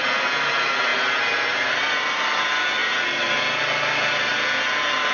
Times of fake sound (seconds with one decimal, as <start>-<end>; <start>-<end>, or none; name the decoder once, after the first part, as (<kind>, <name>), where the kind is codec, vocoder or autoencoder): none